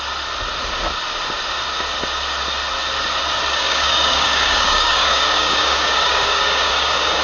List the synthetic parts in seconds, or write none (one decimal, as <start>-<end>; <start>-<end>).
3.5-7.2